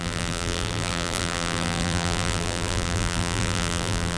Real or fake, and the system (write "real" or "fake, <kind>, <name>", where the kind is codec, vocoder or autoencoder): fake, vocoder, BigVGAN v2